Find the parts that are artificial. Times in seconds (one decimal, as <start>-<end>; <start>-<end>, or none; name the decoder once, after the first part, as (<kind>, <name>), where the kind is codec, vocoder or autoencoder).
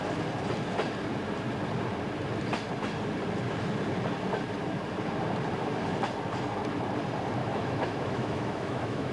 7.4-9.1 (autoencoder, DAC-VAE)